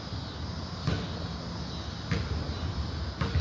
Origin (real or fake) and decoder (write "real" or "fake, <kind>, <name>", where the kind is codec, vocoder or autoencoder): real